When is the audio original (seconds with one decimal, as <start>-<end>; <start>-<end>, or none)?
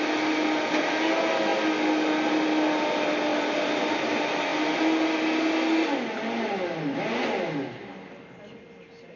0.0-9.2